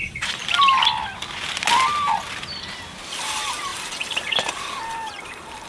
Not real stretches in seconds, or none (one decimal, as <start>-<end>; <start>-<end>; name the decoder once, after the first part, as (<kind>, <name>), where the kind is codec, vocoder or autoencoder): 0.0-0.4 (vocoder, BigVGAN v2); 3.1-5.7